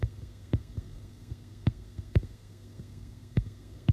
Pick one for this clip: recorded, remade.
remade